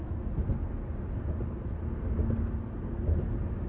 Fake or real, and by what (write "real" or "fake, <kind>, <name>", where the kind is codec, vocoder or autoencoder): real